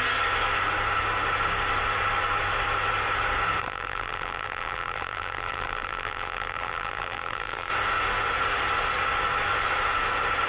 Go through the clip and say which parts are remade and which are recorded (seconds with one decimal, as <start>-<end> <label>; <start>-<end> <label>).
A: 0.0-3.6 recorded; 3.6-7.7 remade; 7.7-10.5 recorded

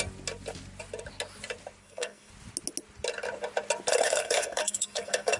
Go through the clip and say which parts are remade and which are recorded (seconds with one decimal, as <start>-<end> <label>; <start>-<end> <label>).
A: 0.0-1.8 recorded; 1.8-2.3 remade; 2.3-3.9 recorded; 3.9-5.4 remade

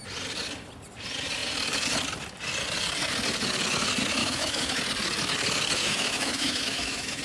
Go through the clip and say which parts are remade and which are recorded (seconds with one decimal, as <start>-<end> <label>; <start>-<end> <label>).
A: 0.0-4.2 recorded; 4.2-4.8 remade; 4.8-5.8 recorded; 5.8-7.2 remade

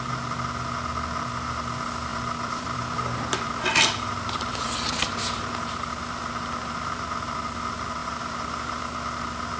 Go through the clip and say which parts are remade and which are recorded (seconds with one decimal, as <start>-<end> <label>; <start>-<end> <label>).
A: 0.0-2.1 recorded; 2.1-5.5 remade; 5.5-8.0 recorded; 8.0-9.2 remade; 9.2-9.6 recorded

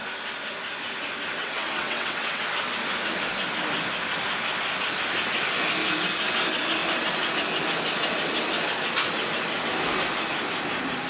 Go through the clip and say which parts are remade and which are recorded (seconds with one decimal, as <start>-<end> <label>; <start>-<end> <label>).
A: 0.0-1.4 recorded; 1.4-2.4 remade; 2.4-11.1 recorded

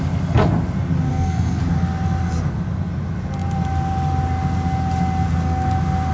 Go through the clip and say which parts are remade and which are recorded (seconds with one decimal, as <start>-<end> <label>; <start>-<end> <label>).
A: 0.0-1.1 recorded; 1.1-1.6 remade; 1.6-6.1 recorded

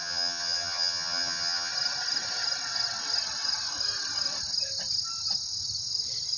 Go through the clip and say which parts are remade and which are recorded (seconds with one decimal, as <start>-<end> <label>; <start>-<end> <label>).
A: 0.0-1.7 remade; 1.7-6.4 recorded